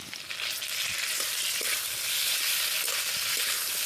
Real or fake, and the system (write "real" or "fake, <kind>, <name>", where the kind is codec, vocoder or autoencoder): real